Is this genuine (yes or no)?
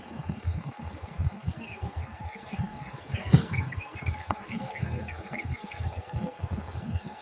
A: no